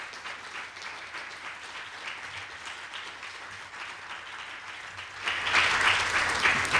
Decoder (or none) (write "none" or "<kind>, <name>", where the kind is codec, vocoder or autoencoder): none